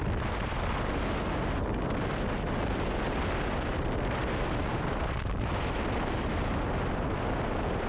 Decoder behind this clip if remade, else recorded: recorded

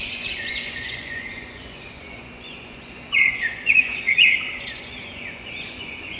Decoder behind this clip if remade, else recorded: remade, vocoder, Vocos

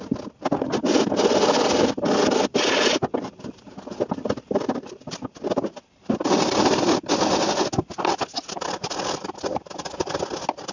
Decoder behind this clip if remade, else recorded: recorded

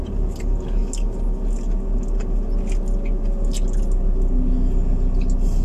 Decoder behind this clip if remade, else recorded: recorded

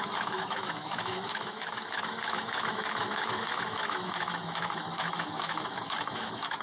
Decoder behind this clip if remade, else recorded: remade, autoencoder, DAC-VAE